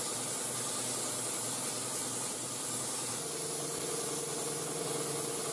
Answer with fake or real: real